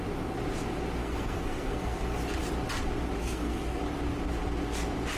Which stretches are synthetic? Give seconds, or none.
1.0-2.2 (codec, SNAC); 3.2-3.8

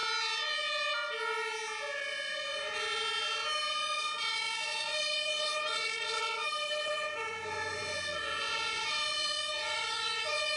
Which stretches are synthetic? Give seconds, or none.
3.7-10.6 (vocoder, Vocos)

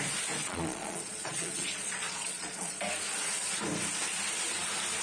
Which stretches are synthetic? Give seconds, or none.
0.4-2.8 (vocoder, Vocos)

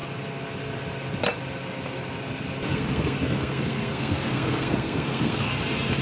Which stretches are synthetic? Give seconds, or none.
2.7-5.5 (codec, SNAC)

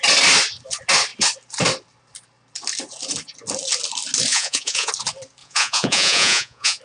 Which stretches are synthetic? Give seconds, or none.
4.3-4.9 (vocoder, Vocos); 5.4-6.8

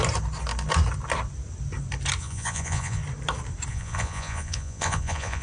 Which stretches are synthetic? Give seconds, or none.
2.2-3.0 (vocoder, Vocos); 3.7-5.4

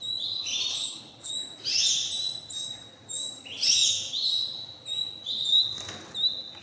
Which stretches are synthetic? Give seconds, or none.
0.7-1.3 (codec, HILCodec)

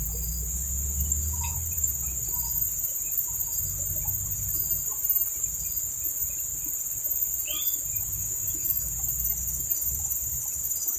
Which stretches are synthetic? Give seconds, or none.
8.2-8.9 (autoencoder, DAC-VAE)